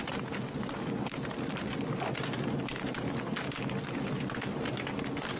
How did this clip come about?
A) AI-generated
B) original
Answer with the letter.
B